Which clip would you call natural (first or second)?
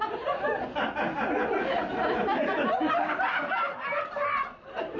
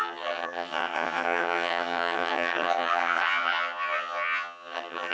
first